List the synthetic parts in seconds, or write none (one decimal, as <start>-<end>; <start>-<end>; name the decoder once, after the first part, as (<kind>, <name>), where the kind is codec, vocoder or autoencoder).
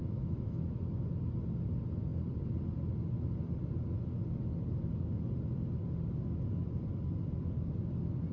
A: 0.0-0.6 (autoencoder, DAC-VAE)